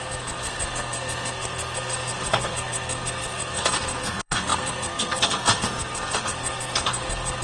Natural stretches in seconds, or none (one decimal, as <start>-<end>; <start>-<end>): none

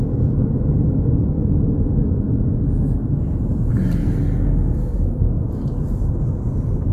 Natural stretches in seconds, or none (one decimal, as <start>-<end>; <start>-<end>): 0.0-4.0; 5.5-6.9